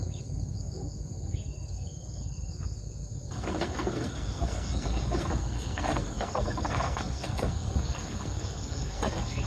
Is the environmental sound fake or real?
fake